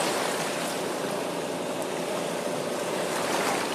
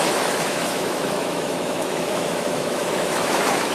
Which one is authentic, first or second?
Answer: first